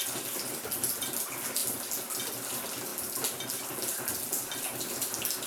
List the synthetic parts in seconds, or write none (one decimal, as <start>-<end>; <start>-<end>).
none